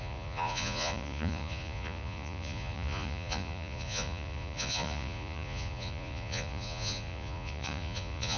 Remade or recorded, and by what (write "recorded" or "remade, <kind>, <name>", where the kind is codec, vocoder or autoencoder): remade, vocoder, Vocos